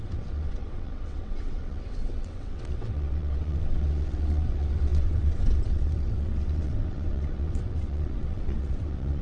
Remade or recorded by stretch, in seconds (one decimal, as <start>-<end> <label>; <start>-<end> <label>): 0.0-9.2 remade